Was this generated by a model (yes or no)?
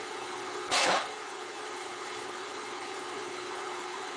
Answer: yes